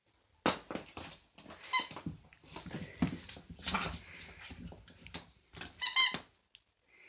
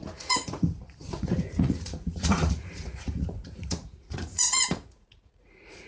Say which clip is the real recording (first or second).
first